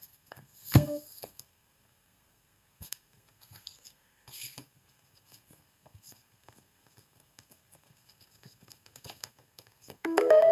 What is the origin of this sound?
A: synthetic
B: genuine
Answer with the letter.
A